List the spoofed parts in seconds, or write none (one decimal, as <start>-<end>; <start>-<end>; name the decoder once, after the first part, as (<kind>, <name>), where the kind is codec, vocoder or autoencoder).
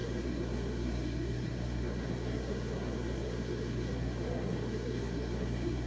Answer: 0.0-5.9 (codec, SNAC)